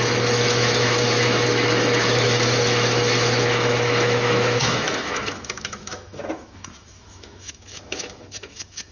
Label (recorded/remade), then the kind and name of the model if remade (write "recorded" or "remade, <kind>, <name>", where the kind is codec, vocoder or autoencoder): remade, autoencoder, DAC-VAE